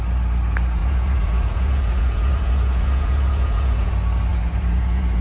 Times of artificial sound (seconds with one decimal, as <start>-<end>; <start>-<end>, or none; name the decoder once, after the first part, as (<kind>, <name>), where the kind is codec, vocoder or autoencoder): 0.8-3.9 (vocoder, Vocos); 4.3-5.2